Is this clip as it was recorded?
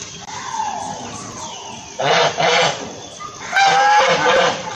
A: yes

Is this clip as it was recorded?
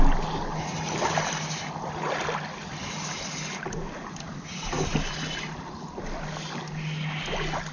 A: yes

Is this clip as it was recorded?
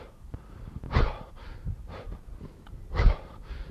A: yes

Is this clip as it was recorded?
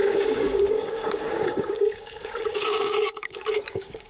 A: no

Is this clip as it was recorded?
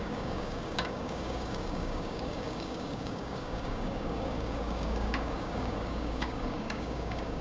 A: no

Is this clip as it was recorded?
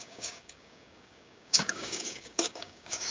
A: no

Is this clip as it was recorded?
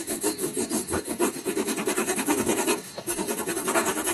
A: no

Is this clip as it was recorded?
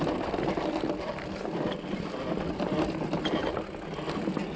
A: yes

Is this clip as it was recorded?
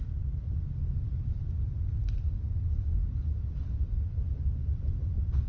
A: yes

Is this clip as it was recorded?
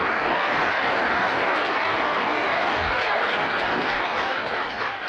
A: no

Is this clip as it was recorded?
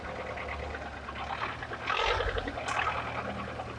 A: yes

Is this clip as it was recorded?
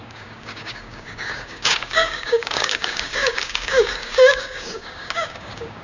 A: no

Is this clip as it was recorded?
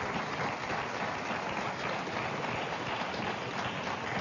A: yes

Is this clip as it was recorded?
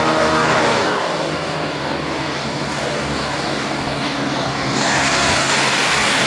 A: no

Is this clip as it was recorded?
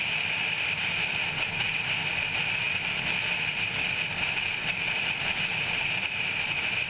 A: yes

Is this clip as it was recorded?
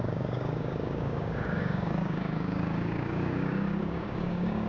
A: no